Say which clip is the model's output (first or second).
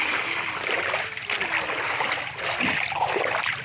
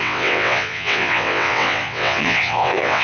second